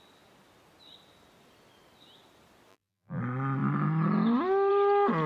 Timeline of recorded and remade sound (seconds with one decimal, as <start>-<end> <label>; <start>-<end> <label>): 0.0-2.7 recorded; 2.7-3.2 remade; 3.2-5.3 recorded

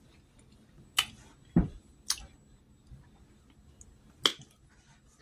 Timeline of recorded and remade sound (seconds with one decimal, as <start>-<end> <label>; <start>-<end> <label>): 0.0-5.2 recorded

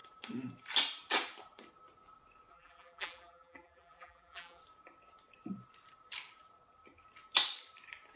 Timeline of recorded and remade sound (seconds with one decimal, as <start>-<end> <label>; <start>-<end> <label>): 0.0-2.5 recorded; 2.5-4.6 remade; 4.6-8.2 recorded

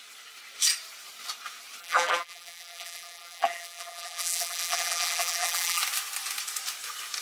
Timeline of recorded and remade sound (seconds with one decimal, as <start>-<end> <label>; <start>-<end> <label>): 0.0-1.8 recorded; 1.8-5.8 remade; 5.8-7.2 recorded

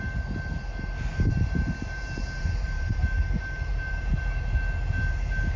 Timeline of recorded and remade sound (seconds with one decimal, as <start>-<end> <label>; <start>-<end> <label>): 0.0-1.1 recorded; 1.1-4.5 remade; 4.5-5.6 recorded

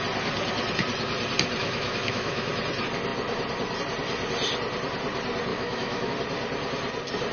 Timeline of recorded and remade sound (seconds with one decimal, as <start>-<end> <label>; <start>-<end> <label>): 0.0-1.6 recorded; 1.6-2.5 remade; 2.5-5.5 recorded; 5.5-6.1 remade; 6.1-7.3 recorded